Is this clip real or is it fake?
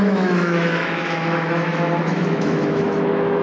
fake